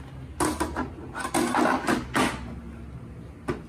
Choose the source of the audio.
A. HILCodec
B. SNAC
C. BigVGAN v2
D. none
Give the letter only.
D